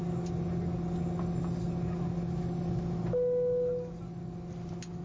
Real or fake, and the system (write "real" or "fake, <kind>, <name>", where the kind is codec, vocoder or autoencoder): real